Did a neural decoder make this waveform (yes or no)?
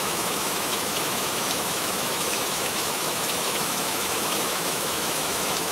yes